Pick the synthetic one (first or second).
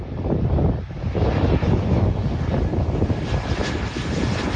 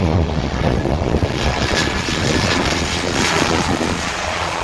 second